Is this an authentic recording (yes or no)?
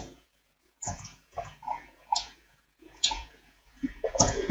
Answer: no